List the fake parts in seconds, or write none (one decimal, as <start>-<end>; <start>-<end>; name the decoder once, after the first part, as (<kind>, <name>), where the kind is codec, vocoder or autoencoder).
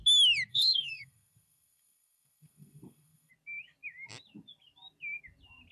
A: 0.5-3.3 (codec, SNAC)